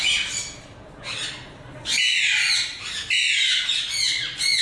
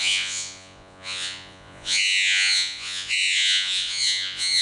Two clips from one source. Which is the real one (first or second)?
first